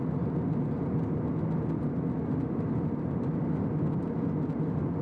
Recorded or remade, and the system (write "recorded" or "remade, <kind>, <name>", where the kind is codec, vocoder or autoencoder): recorded